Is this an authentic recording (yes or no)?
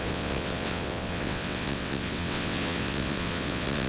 no